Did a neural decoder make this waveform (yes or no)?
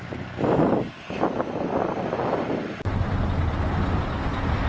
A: no